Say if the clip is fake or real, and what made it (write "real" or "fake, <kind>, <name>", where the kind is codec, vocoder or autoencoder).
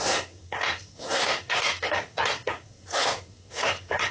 fake, codec, SNAC